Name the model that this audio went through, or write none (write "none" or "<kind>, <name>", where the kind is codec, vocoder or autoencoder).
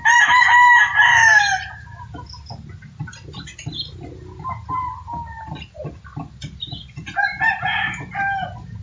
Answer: none